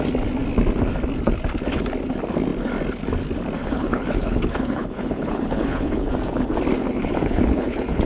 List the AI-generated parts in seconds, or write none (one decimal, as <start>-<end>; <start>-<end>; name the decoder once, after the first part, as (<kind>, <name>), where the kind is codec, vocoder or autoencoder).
3.6-6.1 (codec, HILCodec); 6.8-8.1